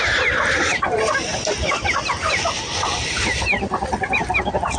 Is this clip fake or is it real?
fake